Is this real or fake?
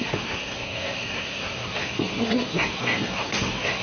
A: fake